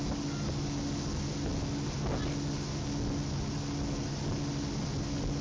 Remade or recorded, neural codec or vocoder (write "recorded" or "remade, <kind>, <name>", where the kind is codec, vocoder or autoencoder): recorded